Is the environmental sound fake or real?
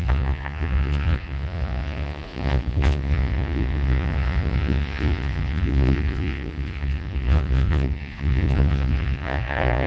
fake